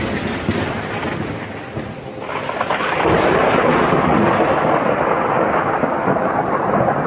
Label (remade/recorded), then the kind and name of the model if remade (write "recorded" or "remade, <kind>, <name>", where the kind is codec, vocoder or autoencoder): recorded